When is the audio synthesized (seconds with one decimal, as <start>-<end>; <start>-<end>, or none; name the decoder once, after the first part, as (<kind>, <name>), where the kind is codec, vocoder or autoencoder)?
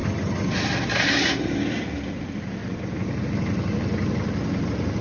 none